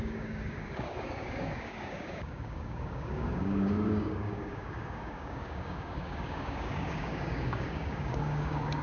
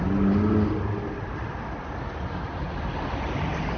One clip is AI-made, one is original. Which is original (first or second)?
second